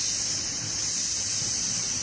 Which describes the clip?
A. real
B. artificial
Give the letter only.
A